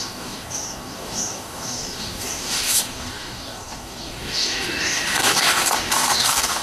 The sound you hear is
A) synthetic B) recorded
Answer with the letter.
A